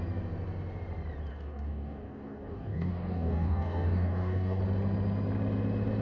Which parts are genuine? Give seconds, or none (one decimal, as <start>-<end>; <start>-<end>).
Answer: 0.0-1.3; 4.6-6.0